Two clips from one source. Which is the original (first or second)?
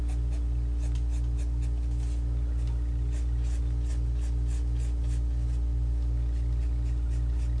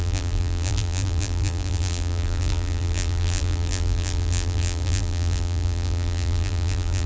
first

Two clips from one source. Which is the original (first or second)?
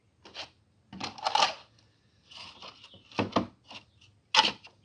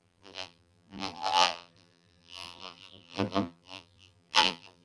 first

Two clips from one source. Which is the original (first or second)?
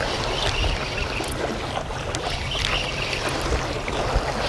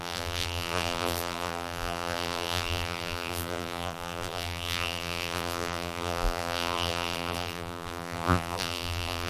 first